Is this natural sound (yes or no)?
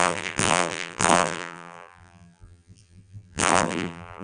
no